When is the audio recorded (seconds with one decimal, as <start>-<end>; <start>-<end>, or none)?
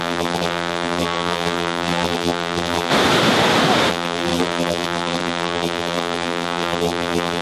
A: 2.9-3.9